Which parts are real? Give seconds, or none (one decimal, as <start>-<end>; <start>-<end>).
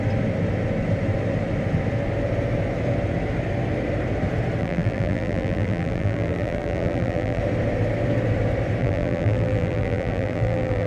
0.0-4.6; 7.4-8.8